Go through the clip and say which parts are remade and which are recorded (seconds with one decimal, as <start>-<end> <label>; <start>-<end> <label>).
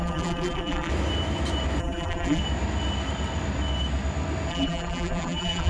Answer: 0.0-0.9 remade; 0.9-1.8 recorded; 1.8-2.4 remade; 2.4-4.5 recorded; 4.5-5.7 remade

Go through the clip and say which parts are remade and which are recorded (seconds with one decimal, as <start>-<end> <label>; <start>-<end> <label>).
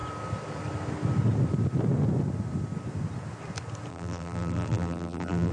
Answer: 0.0-3.9 recorded; 3.9-5.5 remade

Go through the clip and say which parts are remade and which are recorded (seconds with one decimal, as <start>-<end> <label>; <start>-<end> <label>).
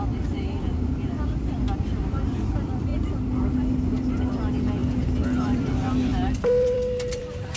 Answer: 0.0-2.9 remade; 2.9-3.7 recorded; 3.7-7.6 remade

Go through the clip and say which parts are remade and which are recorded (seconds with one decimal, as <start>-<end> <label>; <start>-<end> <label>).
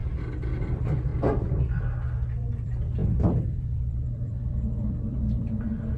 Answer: 0.0-0.5 recorded; 0.5-1.1 remade; 1.1-2.5 recorded; 2.5-6.0 remade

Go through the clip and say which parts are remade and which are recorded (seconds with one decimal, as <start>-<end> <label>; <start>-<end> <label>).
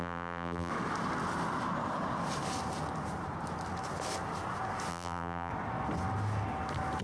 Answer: 0.0-0.7 remade; 0.7-4.9 recorded; 4.9-5.5 remade; 5.5-7.0 recorded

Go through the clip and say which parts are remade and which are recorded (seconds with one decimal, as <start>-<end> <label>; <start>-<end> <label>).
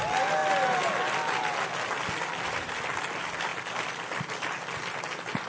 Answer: 0.0-3.5 recorded; 3.5-4.2 remade; 4.2-5.5 recorded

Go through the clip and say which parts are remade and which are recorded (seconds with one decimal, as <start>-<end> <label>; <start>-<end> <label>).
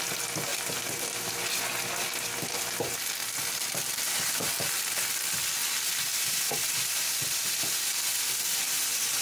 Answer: 0.0-0.5 recorded; 0.5-1.2 remade; 1.2-3.2 recorded; 3.2-4.5 remade; 4.5-5.6 recorded; 5.6-6.7 remade; 6.7-9.2 recorded